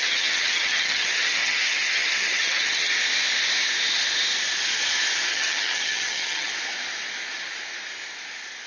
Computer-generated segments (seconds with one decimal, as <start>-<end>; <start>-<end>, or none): 0.0-2.9; 5.3-6.5